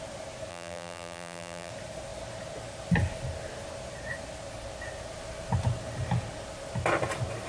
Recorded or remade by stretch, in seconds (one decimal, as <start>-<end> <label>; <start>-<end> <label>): 0.0-0.5 recorded; 0.5-1.7 remade; 1.7-7.5 recorded